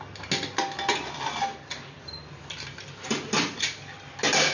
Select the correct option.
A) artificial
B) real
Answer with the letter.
B